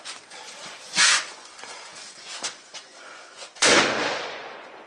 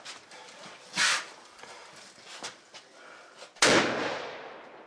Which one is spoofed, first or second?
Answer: first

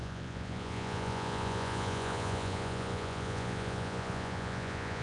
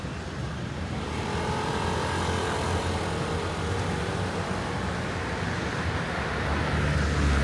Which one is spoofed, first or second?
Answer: first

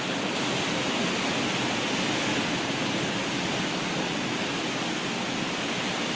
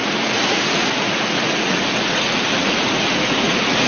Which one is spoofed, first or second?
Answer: second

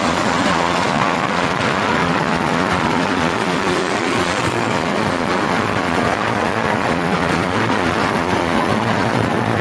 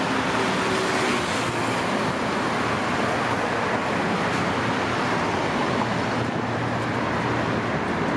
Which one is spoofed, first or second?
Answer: first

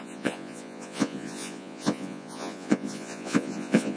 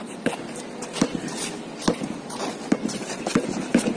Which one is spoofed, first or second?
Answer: first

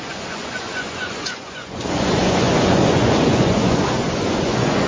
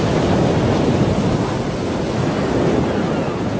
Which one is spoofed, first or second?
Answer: first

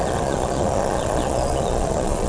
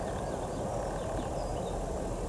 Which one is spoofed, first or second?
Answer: first